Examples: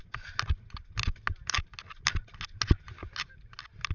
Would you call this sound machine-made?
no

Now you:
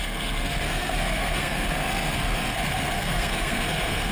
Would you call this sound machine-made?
yes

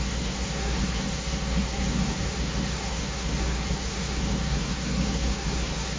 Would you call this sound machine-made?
yes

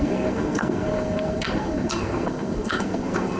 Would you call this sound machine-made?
yes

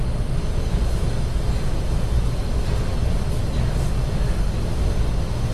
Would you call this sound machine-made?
no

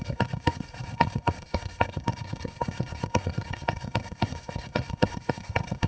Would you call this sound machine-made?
yes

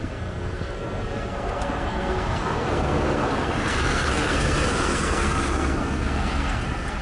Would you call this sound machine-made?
yes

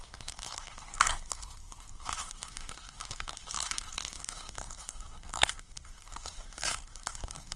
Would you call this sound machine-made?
yes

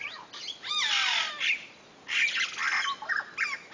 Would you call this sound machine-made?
no